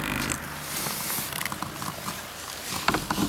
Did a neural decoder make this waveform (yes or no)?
no